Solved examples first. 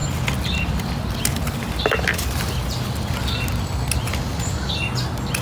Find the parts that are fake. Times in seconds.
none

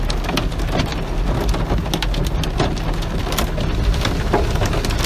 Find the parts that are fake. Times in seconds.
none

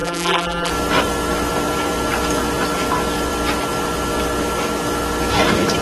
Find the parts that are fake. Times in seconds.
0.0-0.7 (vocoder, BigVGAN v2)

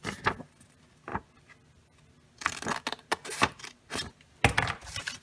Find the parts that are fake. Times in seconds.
none

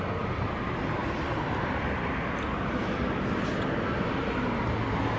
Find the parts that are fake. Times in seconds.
none

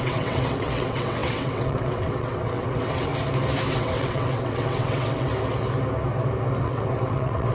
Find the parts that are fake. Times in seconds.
0.0-3.1 (vocoder, WaveNeXt); 3.7-5.3; 6.6-7.5